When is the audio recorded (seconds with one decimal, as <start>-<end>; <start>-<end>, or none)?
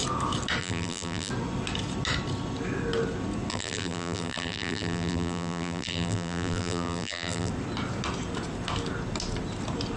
0.0-0.6; 1.3-3.5; 7.5-10.0